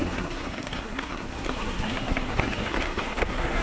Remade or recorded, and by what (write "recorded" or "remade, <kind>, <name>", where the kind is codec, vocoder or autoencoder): remade, codec, SNAC